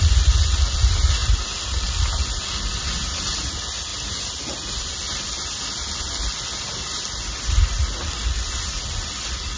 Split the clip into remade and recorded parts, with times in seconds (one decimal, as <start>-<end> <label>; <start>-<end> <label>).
0.0-9.6 recorded